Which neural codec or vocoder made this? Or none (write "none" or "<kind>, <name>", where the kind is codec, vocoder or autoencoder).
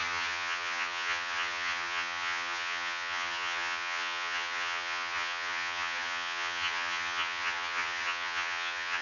vocoder, HiFi-GAN